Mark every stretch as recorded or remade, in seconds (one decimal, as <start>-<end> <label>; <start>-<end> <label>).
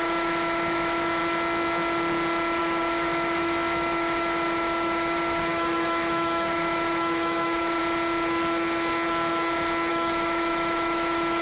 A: 0.0-1.2 remade; 1.2-2.6 recorded; 2.6-7.8 remade; 7.8-9.9 recorded; 9.9-11.4 remade